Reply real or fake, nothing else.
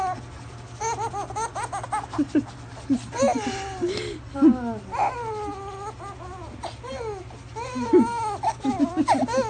real